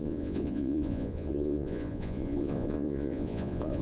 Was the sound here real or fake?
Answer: fake